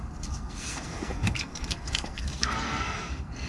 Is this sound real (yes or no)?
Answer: no